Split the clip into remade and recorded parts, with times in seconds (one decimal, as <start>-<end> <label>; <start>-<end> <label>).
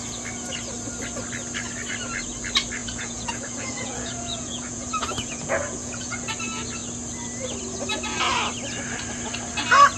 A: 0.0-2.8 recorded; 2.8-6.2 remade; 6.2-10.0 recorded